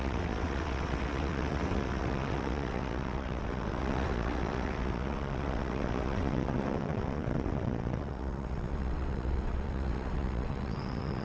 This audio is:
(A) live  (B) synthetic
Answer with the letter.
B